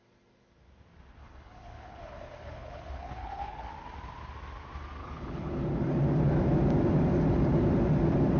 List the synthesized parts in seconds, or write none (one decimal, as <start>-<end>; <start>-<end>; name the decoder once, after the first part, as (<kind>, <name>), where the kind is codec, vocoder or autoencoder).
1.2-3.7 (codec, HILCodec); 5.0-5.6